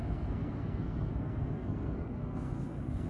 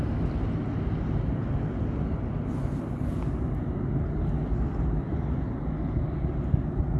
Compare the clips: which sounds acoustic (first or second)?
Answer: second